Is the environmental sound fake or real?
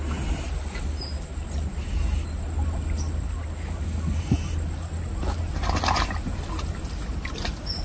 real